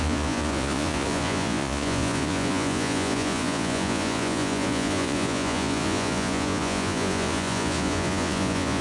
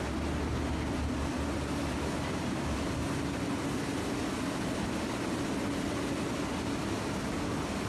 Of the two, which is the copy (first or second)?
first